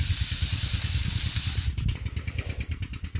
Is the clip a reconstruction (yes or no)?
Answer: no